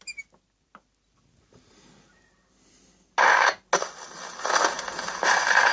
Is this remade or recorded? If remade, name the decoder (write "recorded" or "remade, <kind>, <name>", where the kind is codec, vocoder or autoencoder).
recorded